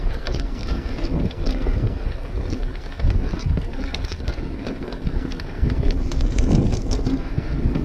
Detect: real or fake fake